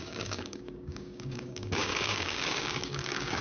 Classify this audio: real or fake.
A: fake